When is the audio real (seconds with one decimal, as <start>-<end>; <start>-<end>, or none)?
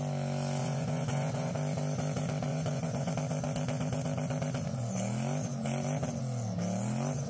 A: 0.0-0.6; 1.5-2.5; 3.1-7.3